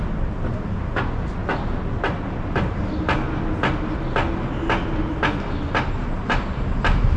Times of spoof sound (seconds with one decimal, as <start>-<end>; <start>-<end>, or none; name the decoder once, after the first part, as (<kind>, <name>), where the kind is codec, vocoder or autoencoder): none